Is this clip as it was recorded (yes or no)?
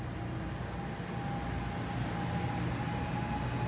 yes